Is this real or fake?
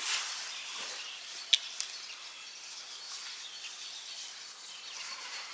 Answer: real